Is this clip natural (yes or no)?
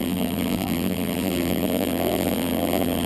no